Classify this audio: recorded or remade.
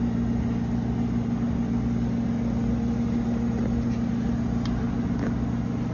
recorded